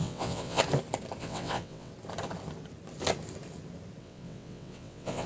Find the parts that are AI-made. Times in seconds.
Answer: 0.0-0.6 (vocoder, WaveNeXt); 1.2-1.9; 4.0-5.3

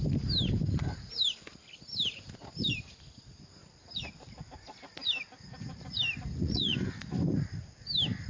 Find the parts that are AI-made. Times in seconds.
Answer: 6.4-7.0 (vocoder, Vocos)

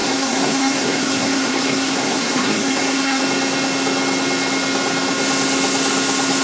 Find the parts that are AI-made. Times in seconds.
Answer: 0.0-3.2 (codec, SNAC)

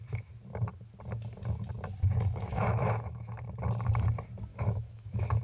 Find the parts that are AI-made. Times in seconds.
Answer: 2.5-3.4 (autoencoder, DAC-VAE); 4.5-5.4